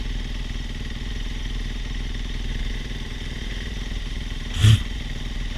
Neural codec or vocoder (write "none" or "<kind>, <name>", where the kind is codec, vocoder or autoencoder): vocoder, BigVGAN v2